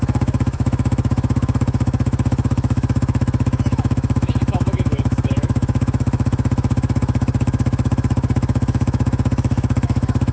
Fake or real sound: fake